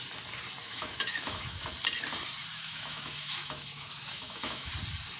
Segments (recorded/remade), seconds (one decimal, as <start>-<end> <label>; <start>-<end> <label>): 0.0-0.6 recorded; 0.6-1.7 remade; 1.7-2.5 recorded; 2.5-4.7 remade; 4.7-5.2 recorded